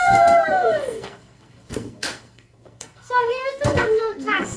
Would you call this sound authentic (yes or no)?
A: no